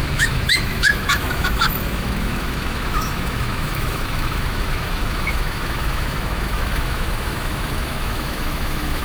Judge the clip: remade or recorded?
remade